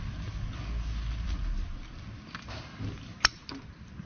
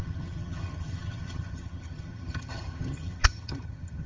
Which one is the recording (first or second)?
first